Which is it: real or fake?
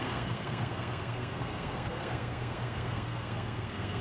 fake